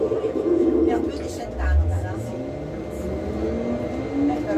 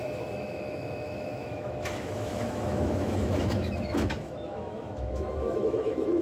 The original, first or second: first